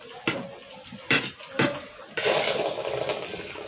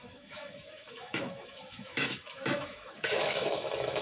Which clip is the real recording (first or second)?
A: first